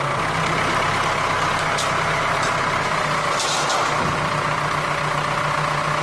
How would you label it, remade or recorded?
recorded